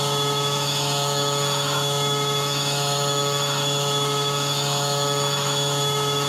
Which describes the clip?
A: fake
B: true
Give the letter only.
A